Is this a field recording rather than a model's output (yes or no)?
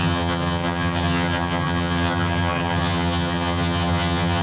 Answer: no